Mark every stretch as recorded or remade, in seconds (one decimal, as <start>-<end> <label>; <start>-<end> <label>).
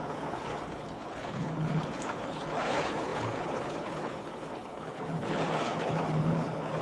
0.0-6.8 remade